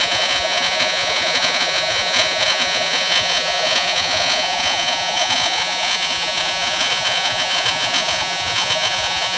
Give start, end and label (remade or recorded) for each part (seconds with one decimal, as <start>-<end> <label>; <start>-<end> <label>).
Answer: 0.0-9.4 remade